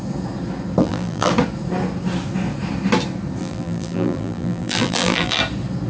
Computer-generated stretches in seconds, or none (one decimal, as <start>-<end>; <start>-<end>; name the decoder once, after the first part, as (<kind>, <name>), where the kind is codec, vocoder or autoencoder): 0.8-1.3 (vocoder, BigVGAN v2); 3.4-5.4